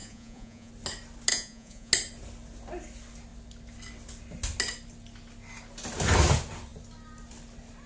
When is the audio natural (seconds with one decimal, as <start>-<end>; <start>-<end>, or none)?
0.7-1.3; 1.9-7.9